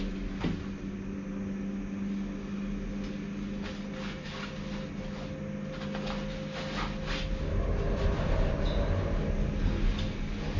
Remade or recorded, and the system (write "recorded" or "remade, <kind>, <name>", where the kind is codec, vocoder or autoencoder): recorded